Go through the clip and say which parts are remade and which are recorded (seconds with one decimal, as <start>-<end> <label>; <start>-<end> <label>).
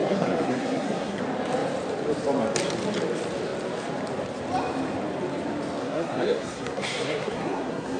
0.0-1.2 remade; 1.2-5.8 recorded; 5.8-8.0 remade